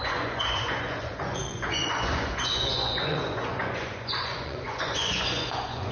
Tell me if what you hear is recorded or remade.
remade